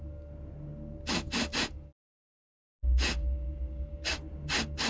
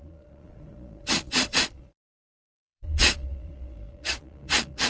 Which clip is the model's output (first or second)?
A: second